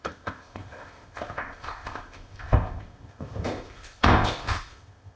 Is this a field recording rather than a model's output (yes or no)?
no